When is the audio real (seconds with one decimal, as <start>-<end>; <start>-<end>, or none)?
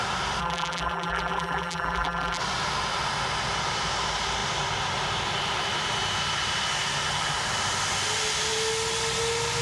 0.0-0.4; 2.4-9.6